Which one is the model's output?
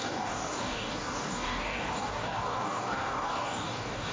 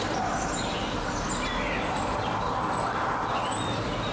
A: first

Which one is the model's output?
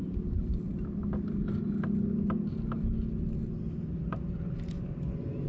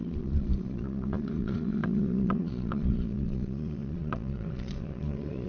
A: second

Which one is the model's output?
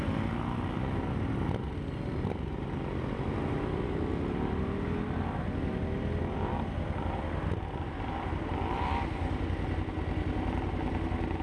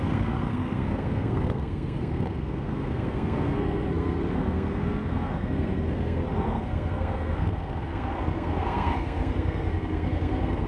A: second